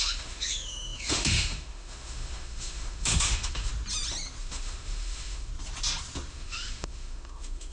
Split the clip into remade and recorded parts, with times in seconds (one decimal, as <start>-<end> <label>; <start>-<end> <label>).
0.0-3.7 remade; 3.7-4.4 recorded; 4.4-5.5 remade; 5.5-6.3 recorded; 6.3-7.7 remade